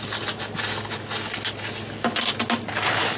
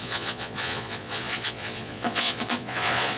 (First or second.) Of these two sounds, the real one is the first